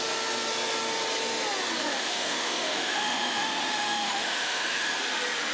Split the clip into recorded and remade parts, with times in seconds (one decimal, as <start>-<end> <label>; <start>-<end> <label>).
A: 0.0-1.8 recorded; 1.8-5.0 remade; 5.0-5.5 recorded